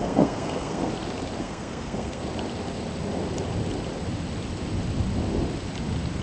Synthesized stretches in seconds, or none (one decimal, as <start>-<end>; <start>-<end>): 0.0-0.9; 1.4-2.2